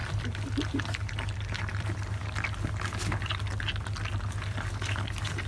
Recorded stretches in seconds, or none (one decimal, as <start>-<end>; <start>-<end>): 0.0-5.5